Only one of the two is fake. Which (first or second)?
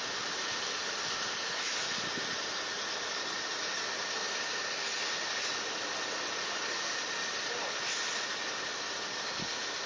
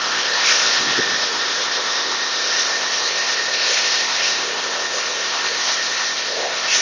second